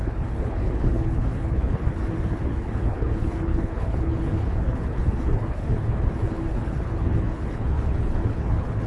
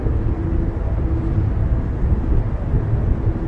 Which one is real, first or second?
second